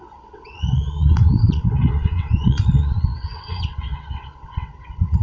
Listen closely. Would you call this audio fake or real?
fake